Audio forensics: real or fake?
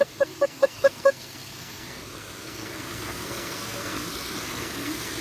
fake